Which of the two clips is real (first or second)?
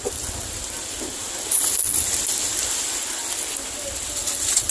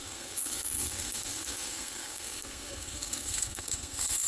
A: first